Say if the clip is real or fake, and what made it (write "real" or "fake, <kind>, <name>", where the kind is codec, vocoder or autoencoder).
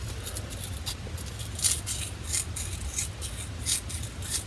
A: real